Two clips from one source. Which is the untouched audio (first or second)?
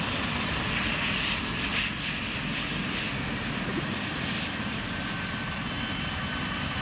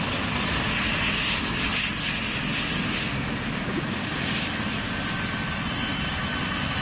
second